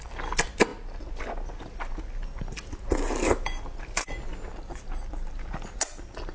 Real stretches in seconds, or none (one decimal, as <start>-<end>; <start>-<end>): 0.0-6.3